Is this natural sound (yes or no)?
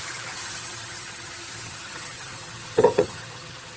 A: no